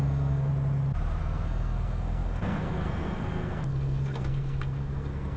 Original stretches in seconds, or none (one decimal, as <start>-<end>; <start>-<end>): 0.5-1.2